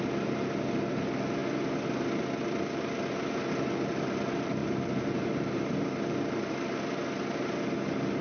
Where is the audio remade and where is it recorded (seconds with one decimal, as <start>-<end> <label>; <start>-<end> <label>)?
0.0-4.6 recorded; 4.6-5.7 remade; 5.7-8.2 recorded